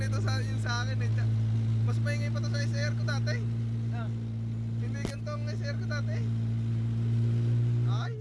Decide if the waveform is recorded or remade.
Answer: recorded